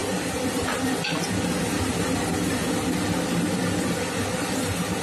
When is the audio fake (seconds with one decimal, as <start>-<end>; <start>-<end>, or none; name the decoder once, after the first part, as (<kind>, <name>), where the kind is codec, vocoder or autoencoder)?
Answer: none